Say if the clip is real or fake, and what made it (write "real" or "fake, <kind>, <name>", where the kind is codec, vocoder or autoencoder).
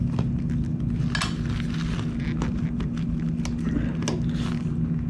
real